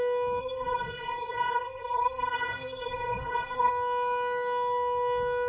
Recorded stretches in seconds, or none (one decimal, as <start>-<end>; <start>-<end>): 0.0-0.4; 3.7-5.5